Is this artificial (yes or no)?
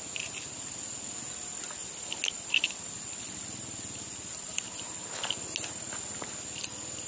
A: no